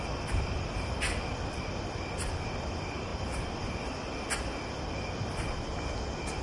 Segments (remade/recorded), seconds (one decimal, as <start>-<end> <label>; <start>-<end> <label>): 0.0-6.4 recorded